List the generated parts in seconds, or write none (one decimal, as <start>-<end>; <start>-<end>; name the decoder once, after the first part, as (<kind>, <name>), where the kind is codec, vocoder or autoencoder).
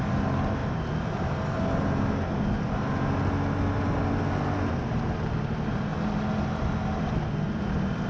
none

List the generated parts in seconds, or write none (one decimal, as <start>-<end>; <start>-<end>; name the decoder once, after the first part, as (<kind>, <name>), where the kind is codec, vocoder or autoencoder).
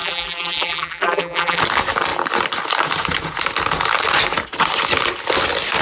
0.0-1.6 (vocoder, BigVGAN v2)